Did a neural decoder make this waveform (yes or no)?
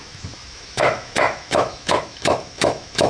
yes